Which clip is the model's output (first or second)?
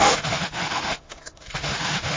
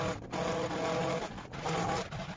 first